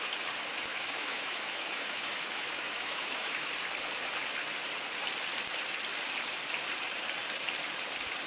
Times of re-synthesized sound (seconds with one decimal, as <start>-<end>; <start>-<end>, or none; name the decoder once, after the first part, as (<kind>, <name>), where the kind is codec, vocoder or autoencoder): 0.7-3.5 (autoencoder, DAC-VAE)